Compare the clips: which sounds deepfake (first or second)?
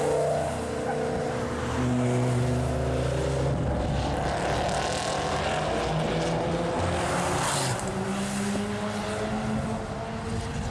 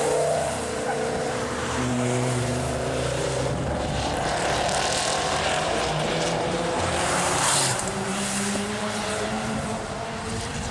second